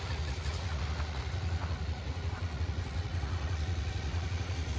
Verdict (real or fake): fake